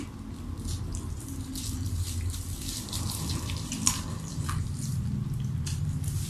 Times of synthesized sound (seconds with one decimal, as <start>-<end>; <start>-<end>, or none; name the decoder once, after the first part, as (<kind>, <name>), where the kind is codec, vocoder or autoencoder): 0.9-4.7 (vocoder, BigVGAN v2)